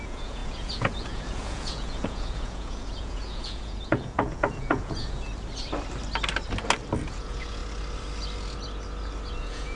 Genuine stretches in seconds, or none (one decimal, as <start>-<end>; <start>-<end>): 5.3-7.0; 7.6-9.4

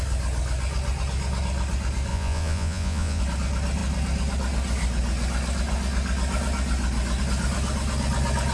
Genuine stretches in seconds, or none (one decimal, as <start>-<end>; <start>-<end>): 0.0-2.1; 3.2-8.5

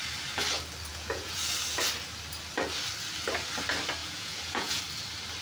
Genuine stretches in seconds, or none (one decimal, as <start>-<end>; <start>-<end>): 0.0-0.9; 1.4-4.0; 4.8-5.4

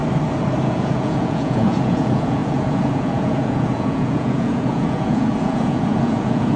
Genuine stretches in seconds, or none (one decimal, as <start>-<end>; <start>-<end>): 0.0-0.6

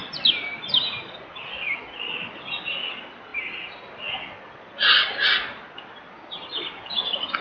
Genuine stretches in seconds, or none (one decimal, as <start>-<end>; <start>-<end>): 0.0-7.4

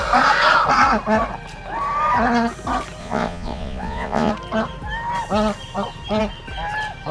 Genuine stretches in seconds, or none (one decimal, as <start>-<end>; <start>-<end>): 0.0-3.0; 4.3-7.1